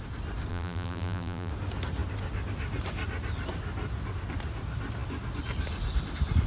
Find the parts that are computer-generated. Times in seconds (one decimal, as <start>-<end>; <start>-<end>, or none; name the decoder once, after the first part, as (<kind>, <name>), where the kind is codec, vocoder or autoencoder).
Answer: 0.5-1.5 (vocoder, BigVGAN v2)